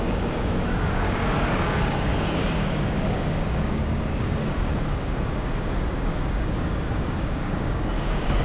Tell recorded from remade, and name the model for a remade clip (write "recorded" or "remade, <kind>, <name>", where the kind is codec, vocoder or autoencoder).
remade, codec, DAC